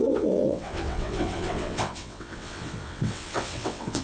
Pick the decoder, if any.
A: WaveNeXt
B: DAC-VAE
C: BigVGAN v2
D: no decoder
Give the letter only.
A